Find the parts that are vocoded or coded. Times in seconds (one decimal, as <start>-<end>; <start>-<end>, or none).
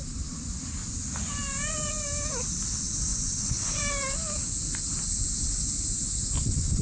3.1-3.8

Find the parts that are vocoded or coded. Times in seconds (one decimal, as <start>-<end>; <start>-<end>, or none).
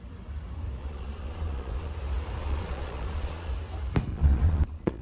0.8-1.9; 2.4-3.5; 4.1-5.0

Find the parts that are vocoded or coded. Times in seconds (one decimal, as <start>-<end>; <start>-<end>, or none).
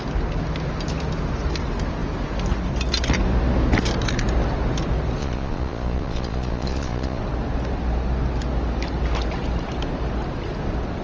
5.2-7.2